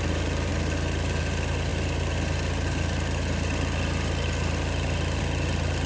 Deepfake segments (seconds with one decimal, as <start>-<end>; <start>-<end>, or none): none

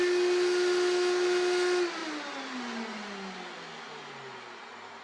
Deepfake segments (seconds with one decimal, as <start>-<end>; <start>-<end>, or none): none